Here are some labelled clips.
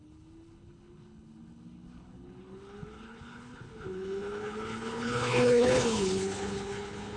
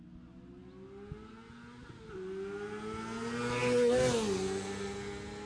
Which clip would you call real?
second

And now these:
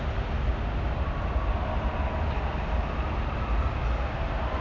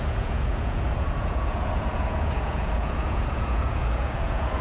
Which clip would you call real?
first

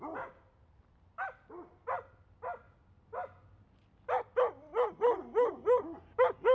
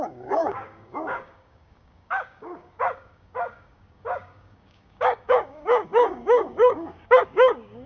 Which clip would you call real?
first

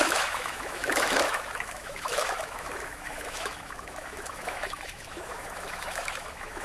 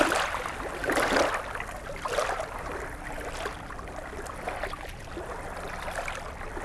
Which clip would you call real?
second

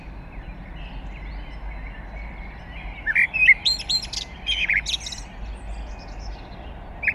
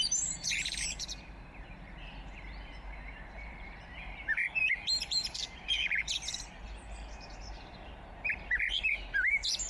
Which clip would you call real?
first